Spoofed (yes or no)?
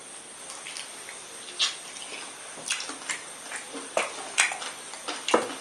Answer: no